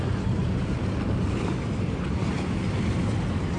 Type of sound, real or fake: real